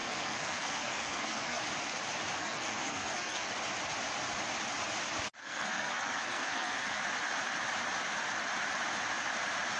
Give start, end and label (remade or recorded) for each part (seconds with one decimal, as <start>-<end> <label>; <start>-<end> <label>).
0.0-1.6 remade; 1.6-2.4 recorded; 2.4-3.5 remade; 3.5-5.4 recorded; 5.4-7.0 remade; 7.0-9.8 recorded